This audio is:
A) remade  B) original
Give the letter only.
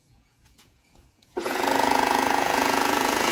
A